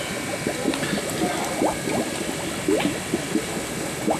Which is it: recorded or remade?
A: recorded